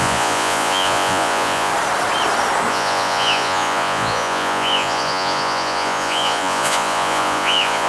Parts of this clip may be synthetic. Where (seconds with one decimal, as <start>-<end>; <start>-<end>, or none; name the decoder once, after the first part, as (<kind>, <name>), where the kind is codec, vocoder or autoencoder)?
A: 0.0-1.7 (vocoder, Vocos); 2.7-7.9